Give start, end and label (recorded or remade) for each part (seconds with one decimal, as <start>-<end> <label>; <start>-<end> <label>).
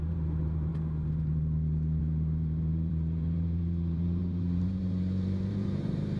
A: 0.0-0.7 remade; 0.7-2.0 recorded; 2.0-6.2 remade